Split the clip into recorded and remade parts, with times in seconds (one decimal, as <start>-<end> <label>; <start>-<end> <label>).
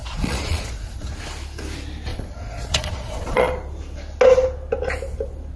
0.0-1.1 remade; 1.1-2.1 recorded; 2.1-3.5 remade; 3.5-5.6 recorded